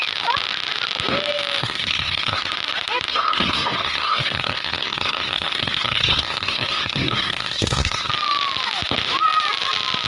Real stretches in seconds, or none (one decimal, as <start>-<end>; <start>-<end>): 0.0-1.6; 2.5-3.1; 8.1-10.1